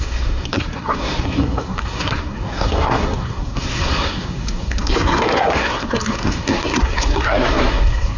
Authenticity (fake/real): fake